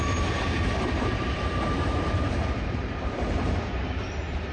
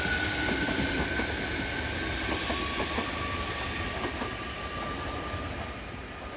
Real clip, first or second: second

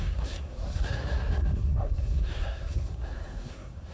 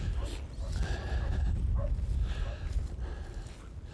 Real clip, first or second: second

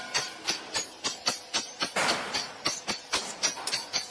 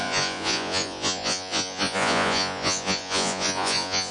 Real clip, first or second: first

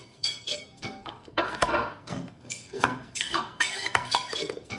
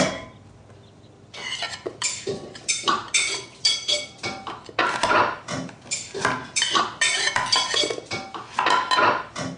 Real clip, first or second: second